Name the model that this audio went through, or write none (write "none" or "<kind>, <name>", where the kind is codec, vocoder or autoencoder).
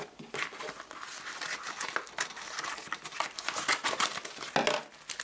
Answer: none